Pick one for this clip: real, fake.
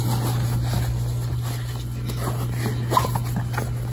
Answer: real